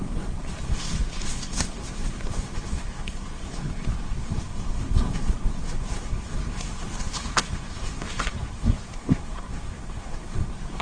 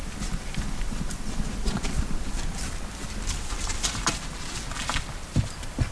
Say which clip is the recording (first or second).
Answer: second